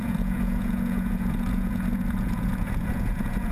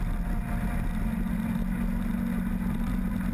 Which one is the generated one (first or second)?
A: first